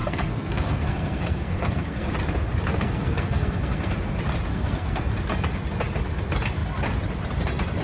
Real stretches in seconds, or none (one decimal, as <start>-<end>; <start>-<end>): 2.1-2.7; 3.9-4.5; 5.1-7.8